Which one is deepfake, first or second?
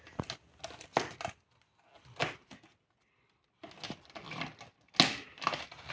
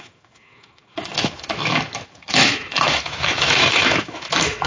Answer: second